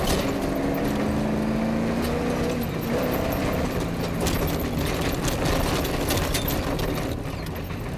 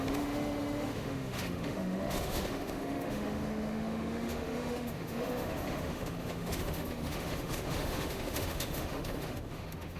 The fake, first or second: second